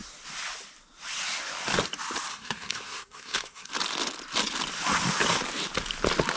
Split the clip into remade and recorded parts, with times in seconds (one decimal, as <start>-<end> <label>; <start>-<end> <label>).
0.0-2.3 recorded; 2.3-3.7 remade; 3.7-6.4 recorded